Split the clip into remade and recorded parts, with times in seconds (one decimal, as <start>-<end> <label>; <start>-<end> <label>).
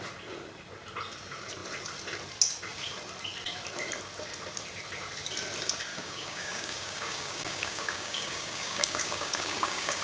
0.0-5.9 recorded; 5.9-10.0 remade